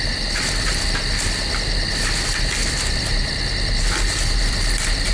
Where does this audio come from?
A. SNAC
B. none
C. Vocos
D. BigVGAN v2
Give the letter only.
B